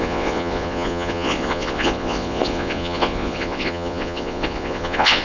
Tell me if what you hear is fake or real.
fake